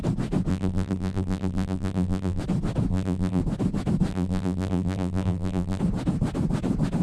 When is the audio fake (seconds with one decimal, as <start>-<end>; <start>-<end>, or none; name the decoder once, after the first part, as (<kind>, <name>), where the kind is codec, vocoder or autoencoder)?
0.5-2.4 (vocoder, BigVGAN v2); 2.9-3.4; 4.1-5.8